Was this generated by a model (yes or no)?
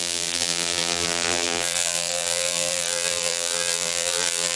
yes